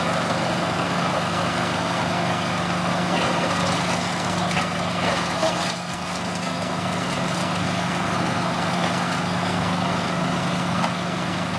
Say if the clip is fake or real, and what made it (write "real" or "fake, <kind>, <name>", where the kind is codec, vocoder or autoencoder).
fake, codec, SNAC